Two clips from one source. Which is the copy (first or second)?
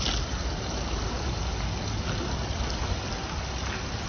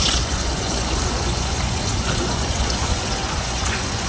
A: second